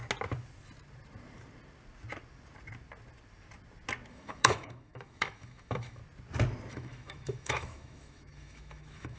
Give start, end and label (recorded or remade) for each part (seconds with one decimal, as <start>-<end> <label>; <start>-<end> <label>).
0.0-4.1 recorded; 4.1-6.0 remade; 6.0-6.7 recorded; 6.7-9.2 remade